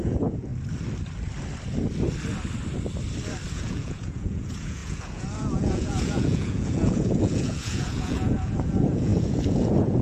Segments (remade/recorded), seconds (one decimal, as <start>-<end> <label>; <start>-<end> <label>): 0.0-0.5 remade; 0.5-3.5 recorded; 3.5-10.0 remade